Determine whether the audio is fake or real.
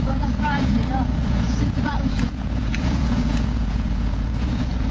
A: fake